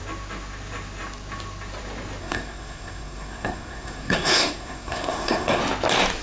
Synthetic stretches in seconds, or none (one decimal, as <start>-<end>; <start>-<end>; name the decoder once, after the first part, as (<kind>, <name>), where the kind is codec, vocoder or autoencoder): 2.2-5.6 (codec, SNAC)